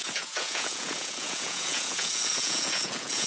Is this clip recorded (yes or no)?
no